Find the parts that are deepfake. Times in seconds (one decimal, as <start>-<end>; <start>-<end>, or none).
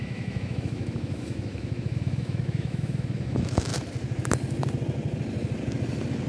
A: 0.0-3.7